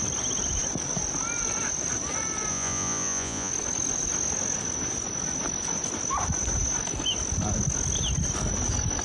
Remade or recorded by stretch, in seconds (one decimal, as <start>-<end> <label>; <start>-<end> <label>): 0.0-2.5 recorded; 2.5-3.5 remade; 3.5-9.0 recorded